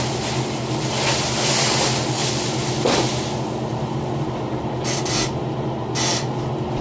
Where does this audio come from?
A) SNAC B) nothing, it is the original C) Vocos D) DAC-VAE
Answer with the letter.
B